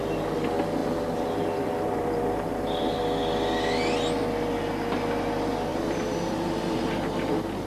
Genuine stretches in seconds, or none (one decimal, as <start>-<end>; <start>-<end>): 0.0-0.8; 3.0-5.7; 7.3-7.7